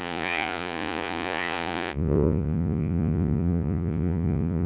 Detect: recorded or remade remade